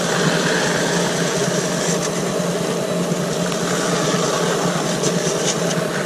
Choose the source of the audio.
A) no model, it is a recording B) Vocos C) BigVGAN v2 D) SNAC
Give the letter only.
A